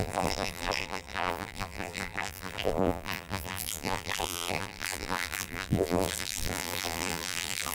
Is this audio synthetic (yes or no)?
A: yes